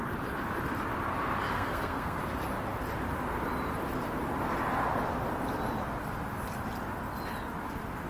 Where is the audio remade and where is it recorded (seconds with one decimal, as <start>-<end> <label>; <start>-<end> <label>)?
0.0-1.5 recorded; 1.5-2.2 remade; 2.2-8.1 recorded